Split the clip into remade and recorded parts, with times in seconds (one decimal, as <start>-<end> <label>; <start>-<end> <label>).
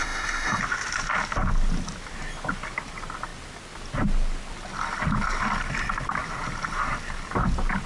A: 0.0-0.6 remade; 0.6-7.9 recorded